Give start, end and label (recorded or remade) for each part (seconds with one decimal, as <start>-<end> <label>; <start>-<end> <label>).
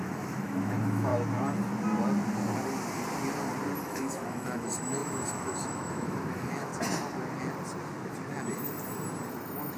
0.0-1.1 remade; 1.1-3.8 recorded; 3.8-6.7 remade; 6.7-9.3 recorded; 9.3-9.8 remade